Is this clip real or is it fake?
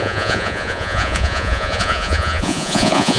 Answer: fake